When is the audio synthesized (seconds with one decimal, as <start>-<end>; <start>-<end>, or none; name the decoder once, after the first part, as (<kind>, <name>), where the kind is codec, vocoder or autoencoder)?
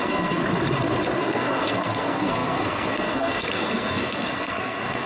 0.0-0.4 (codec, SNAC); 1.2-5.1